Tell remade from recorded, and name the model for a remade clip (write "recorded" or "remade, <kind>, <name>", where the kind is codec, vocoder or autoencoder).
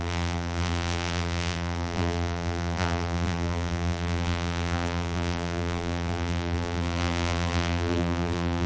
remade, vocoder, BigVGAN v2